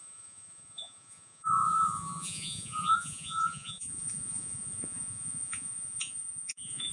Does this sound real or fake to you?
fake